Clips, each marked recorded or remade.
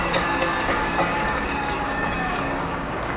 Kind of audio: remade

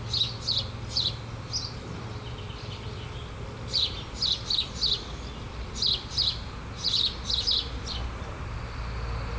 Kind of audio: recorded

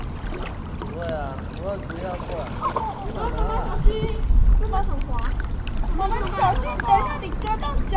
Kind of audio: recorded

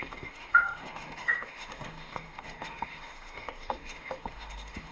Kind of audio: remade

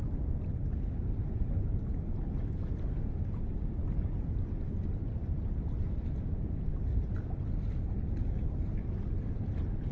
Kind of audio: recorded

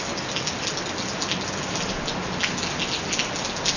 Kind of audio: recorded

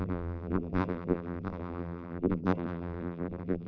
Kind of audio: remade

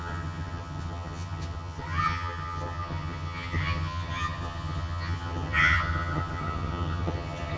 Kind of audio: remade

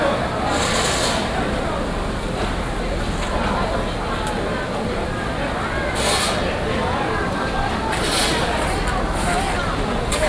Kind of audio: recorded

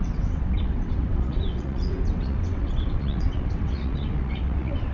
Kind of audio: remade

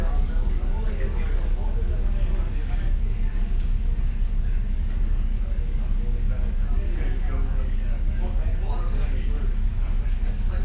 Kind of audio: remade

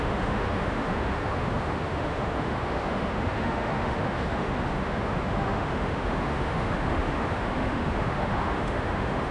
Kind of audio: remade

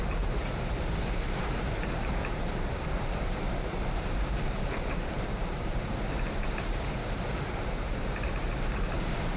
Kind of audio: remade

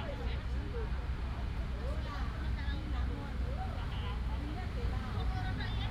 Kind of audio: recorded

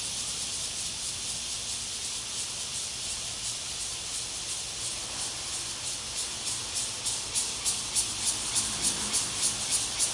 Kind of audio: recorded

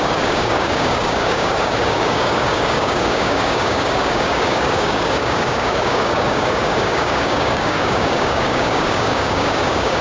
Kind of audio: remade